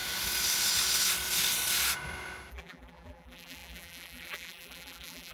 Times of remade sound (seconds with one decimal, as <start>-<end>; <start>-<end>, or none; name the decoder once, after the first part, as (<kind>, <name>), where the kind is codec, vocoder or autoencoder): 2.5-5.3 (vocoder, BigVGAN v2)